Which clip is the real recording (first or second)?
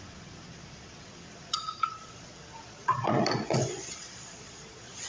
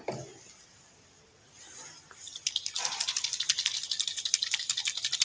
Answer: second